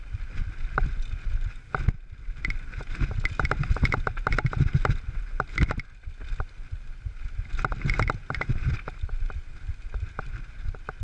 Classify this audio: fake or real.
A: real